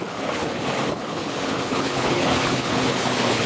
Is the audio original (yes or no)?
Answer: no